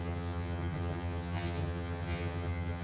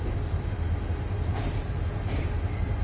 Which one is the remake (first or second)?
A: first